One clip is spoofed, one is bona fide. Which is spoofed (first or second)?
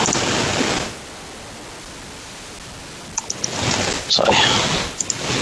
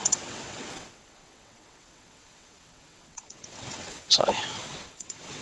second